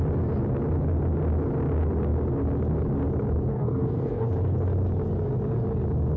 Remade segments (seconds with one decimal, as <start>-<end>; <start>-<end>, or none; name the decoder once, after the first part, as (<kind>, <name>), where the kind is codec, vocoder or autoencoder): 3.5-4.3 (codec, DAC)